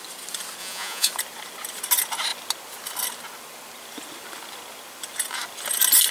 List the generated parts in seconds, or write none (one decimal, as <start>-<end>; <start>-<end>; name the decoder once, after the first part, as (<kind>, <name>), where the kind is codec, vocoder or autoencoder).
0.6-1.1 (vocoder, Vocos)